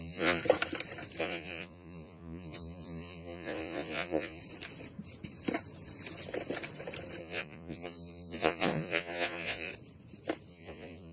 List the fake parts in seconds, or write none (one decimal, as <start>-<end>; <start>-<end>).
0.0-0.4; 1.2-4.4; 7.2-9.7; 10.5-11.1

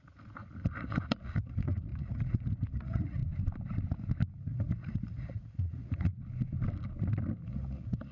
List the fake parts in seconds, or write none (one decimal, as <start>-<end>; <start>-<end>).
0.0-3.2; 4.3-6.1; 7.4-8.1